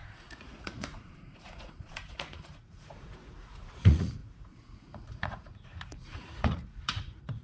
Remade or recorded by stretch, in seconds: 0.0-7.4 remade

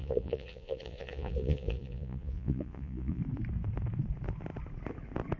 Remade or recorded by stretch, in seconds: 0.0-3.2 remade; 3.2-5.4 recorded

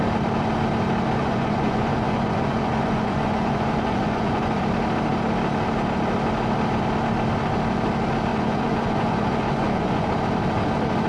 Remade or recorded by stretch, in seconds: 0.0-1.2 recorded; 1.2-4.6 remade; 4.6-8.3 recorded; 8.3-10.1 remade; 10.1-11.1 recorded